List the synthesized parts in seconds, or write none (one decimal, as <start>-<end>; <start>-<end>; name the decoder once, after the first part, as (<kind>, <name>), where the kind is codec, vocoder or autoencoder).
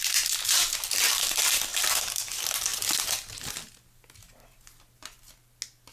1.7-2.3 (vocoder, BigVGAN v2)